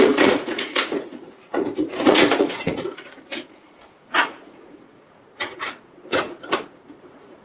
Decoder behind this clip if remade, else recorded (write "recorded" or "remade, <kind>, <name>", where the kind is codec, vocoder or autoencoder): remade, vocoder, Vocos